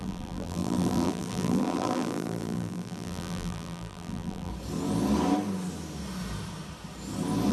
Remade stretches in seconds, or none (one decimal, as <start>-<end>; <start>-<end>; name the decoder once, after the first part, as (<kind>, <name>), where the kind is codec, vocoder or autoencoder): 0.0-4.5 (vocoder, BigVGAN v2)